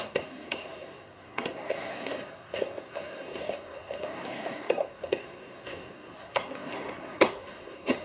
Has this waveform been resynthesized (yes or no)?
yes